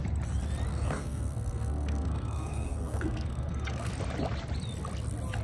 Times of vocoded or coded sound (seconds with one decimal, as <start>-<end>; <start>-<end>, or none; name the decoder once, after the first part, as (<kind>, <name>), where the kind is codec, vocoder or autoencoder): 0.7-3.9 (codec, SNAC)